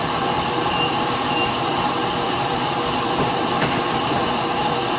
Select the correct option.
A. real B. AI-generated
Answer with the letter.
B